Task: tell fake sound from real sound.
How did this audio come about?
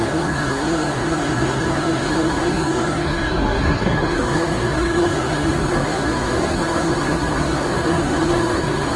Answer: fake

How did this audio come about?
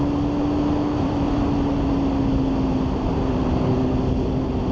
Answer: real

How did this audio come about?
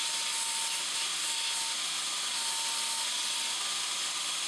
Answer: real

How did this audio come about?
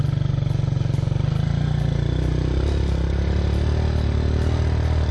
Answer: real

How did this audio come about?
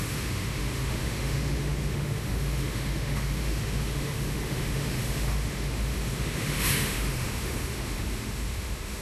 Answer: fake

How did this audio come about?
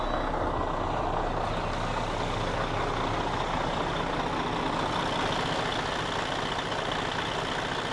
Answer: real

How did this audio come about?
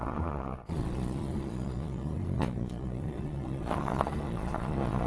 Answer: fake